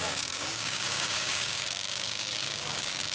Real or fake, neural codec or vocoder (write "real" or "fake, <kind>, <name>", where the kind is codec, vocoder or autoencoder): fake, codec, DAC